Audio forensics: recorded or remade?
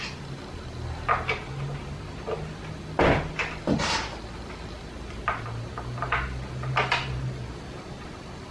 recorded